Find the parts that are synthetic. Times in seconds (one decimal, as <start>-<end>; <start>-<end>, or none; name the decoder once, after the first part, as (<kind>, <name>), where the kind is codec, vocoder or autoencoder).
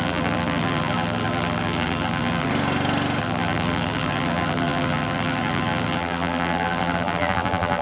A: 0.0-2.5 (vocoder, BigVGAN v2); 3.2-7.8